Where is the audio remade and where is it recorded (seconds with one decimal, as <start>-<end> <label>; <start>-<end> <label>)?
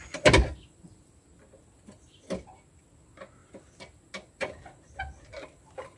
0.0-6.0 recorded